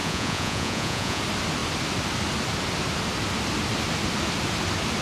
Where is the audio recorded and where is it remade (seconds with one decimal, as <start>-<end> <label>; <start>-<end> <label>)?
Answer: 0.0-1.2 remade; 1.2-5.0 recorded